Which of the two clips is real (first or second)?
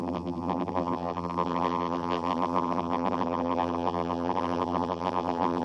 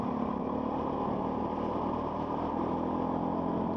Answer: second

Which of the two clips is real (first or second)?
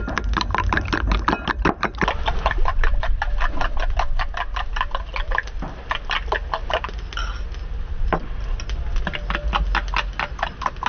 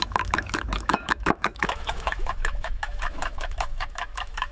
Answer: first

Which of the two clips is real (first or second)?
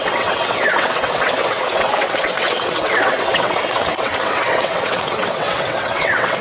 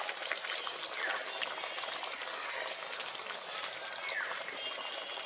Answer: second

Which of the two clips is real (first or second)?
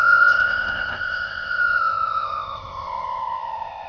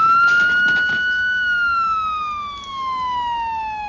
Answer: second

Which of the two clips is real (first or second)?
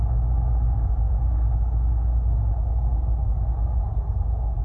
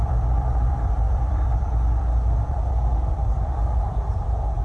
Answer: first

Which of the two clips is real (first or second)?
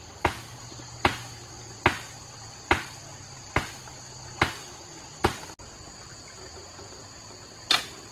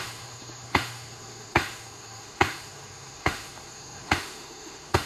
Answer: first